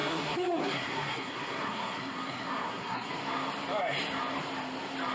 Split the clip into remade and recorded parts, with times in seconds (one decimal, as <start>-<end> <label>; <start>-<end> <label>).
0.0-3.1 remade; 3.1-5.1 recorded